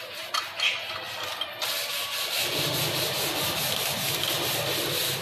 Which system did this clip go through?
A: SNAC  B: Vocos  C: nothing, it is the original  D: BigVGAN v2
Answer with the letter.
D